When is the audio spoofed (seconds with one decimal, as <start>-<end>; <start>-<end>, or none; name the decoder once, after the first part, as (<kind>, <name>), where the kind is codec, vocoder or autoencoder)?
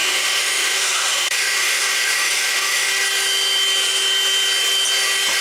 0.0-2.9 (autoencoder, DAC-VAE)